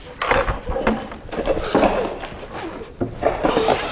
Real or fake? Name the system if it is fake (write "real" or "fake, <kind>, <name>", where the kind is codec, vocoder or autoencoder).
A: real